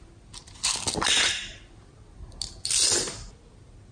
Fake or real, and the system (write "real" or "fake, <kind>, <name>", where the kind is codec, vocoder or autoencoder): real